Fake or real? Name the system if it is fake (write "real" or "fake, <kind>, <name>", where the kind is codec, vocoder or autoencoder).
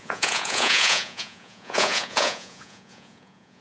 fake, vocoder, Vocos